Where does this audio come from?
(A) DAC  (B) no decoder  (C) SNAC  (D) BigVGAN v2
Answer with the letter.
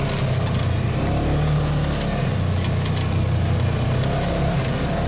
B